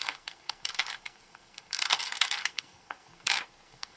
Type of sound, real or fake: fake